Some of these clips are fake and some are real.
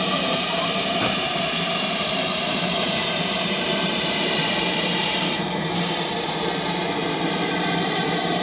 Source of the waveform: fake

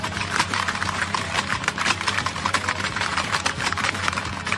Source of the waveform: fake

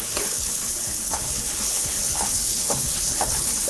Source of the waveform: fake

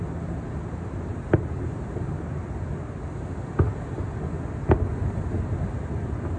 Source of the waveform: real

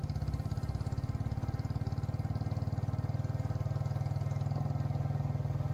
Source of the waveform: real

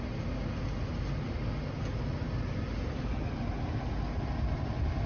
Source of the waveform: real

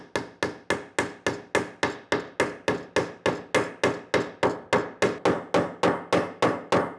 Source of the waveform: real